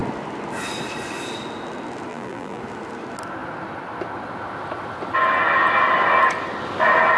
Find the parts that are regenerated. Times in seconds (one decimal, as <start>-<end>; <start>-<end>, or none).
2.1-2.6